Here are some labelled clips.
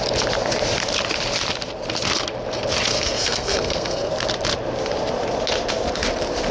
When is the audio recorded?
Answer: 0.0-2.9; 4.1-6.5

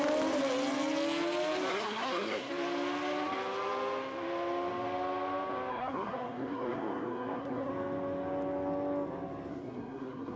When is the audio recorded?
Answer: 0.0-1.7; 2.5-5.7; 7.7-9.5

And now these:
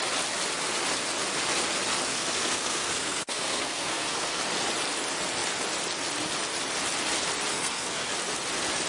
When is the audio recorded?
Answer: 0.0-2.1; 4.4-7.5; 8.1-8.9

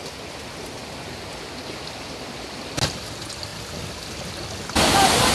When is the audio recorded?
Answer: 0.0-5.3

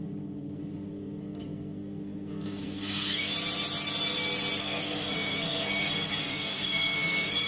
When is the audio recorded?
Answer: 3.3-4.6

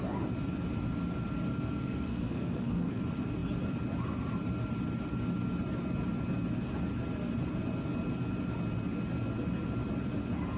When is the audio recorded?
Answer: 0.0-1.5; 3.0-10.6